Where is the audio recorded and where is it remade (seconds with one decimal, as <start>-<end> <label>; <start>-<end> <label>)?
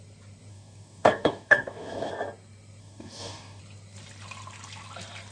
0.0-0.5 recorded; 0.5-2.1 remade; 2.1-2.8 recorded; 2.8-3.6 remade; 3.6-5.3 recorded